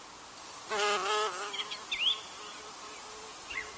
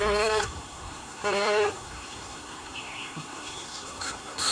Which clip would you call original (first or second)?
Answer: first